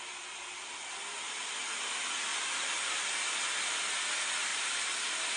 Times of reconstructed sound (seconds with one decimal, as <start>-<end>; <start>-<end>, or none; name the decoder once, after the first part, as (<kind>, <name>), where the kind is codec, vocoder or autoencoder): none